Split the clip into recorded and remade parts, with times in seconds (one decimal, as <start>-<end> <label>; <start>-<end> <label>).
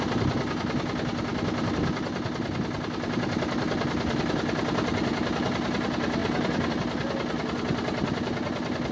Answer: 0.0-6.2 recorded; 6.2-6.7 remade; 6.7-8.9 recorded